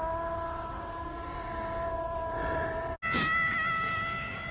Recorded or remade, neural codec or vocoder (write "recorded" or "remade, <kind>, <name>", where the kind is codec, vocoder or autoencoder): recorded